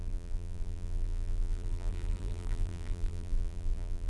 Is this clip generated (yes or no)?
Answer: yes